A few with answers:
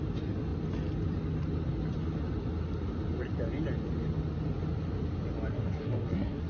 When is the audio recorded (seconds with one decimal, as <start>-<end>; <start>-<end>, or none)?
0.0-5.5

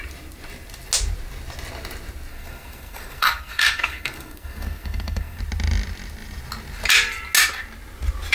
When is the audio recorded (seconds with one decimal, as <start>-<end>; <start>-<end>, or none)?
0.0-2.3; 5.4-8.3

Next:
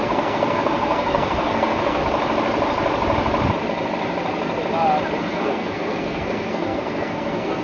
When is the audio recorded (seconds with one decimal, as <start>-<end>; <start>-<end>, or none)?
2.0-5.2